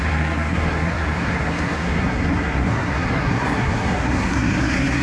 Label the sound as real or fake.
fake